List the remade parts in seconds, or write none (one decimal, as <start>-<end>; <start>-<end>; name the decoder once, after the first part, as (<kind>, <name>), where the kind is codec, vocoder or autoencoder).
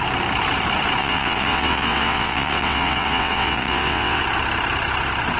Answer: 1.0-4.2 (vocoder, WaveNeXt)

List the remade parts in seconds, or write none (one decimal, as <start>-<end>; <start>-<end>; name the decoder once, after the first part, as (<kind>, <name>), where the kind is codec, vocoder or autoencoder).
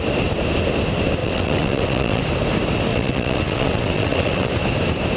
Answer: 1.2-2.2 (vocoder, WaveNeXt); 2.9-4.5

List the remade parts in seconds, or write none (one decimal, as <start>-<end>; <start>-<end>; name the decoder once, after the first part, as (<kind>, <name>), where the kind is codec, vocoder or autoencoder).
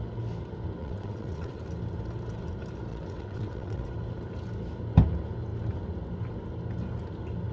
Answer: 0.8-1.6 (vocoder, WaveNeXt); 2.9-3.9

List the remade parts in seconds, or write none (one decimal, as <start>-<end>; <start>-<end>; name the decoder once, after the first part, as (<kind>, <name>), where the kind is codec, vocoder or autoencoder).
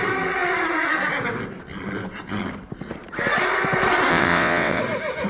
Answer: 4.1-4.8 (vocoder, WaveNeXt)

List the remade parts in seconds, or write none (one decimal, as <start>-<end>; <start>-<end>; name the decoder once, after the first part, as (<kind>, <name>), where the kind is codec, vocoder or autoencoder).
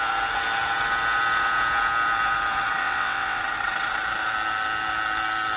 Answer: 2.8-3.4 (vocoder, WaveNeXt)